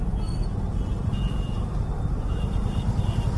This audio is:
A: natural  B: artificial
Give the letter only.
A